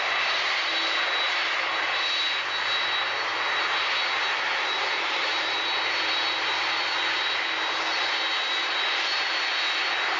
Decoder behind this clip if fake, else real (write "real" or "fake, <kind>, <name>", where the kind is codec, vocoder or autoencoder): real